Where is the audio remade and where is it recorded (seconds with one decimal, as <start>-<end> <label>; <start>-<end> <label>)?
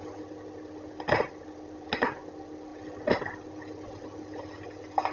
0.0-5.1 recorded